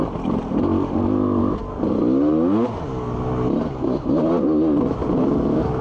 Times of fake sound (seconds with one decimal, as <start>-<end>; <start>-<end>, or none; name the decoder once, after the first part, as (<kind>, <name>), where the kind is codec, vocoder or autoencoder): none